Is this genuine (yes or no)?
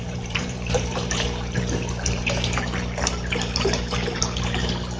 no